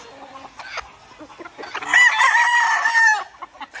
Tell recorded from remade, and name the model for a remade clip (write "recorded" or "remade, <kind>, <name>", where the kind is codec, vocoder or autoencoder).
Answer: recorded